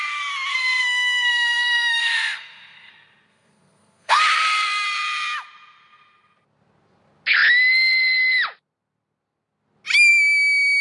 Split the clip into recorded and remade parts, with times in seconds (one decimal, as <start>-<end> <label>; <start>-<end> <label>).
0.0-0.5 recorded; 0.5-2.9 remade; 2.9-3.3 recorded; 3.3-4.2 remade; 4.2-10.8 recorded